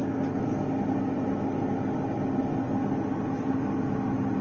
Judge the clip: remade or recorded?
recorded